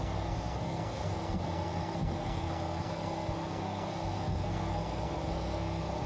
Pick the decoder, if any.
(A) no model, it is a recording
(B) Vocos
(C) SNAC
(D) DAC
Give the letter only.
C